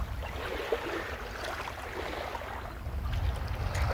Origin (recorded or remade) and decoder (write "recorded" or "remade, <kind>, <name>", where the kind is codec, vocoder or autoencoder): recorded